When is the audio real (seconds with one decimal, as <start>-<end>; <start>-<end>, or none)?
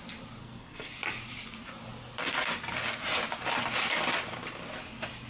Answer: 0.0-0.4; 0.9-5.3